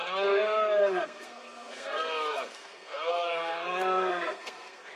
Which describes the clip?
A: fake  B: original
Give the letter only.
A